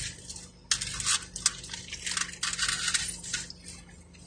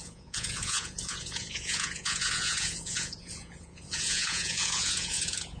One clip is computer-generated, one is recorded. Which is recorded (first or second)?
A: first